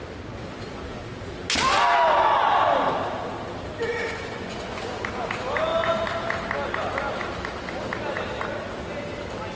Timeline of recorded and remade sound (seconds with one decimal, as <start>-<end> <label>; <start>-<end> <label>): 0.0-3.9 recorded; 3.9-4.8 remade; 4.8-9.6 recorded